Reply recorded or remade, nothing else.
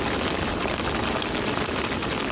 recorded